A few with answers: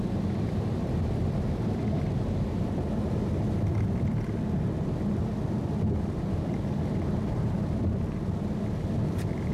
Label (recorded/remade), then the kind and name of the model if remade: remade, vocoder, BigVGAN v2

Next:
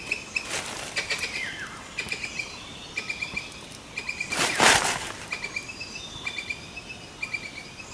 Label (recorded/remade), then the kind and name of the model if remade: remade, vocoder, BigVGAN v2